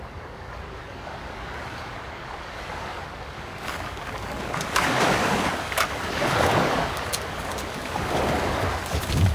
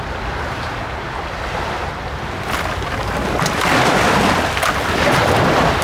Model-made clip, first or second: first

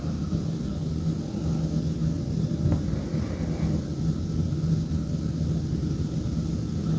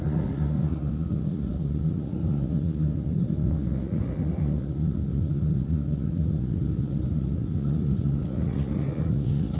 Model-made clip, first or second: second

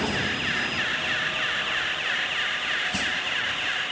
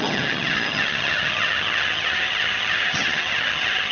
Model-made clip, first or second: second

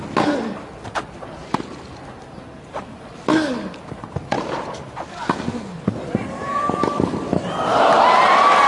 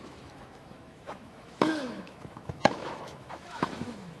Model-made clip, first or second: second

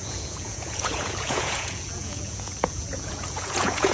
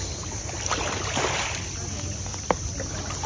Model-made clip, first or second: first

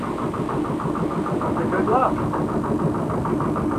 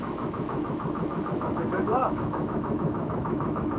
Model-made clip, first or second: second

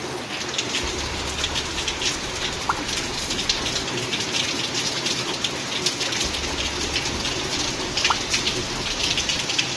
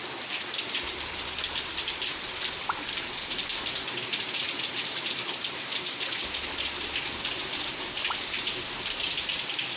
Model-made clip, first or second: second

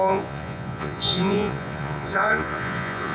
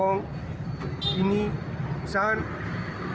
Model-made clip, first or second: first